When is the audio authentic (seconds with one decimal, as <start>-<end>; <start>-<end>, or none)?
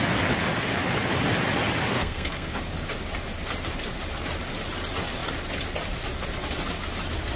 0.0-1.9; 2.6-7.3